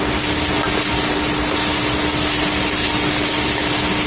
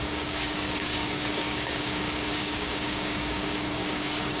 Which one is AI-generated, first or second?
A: second